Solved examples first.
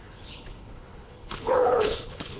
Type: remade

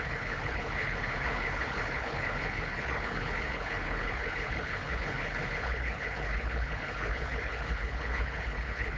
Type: remade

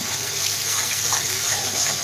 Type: remade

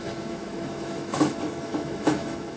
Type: remade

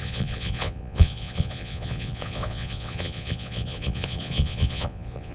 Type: remade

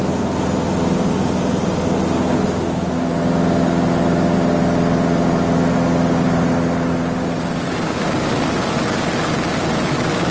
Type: recorded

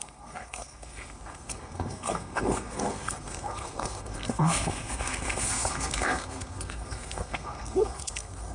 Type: remade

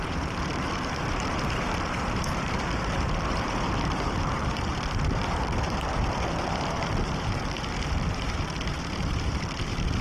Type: remade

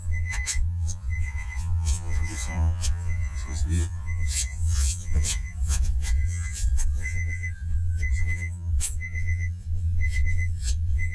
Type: remade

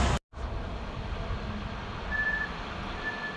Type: recorded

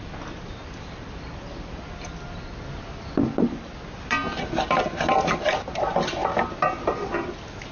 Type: recorded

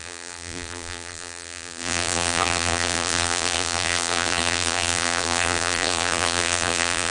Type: remade